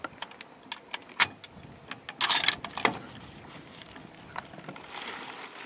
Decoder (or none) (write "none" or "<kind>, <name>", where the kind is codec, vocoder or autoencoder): none